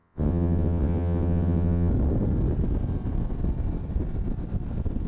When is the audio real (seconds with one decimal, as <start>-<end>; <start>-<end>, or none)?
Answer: 1.9-5.1